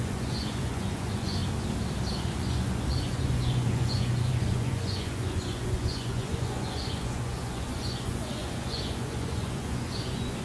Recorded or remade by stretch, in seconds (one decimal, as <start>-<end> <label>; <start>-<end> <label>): 0.0-1.4 remade; 1.4-2.2 recorded; 2.2-10.4 remade